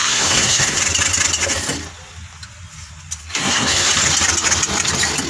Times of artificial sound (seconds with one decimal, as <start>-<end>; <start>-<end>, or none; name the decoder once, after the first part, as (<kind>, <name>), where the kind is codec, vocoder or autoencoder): 0.0-0.8 (codec, SNAC); 3.2-3.9